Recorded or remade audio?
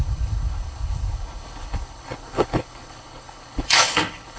remade